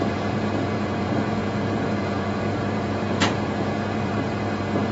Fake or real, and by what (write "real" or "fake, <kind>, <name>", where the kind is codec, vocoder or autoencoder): fake, vocoder, Vocos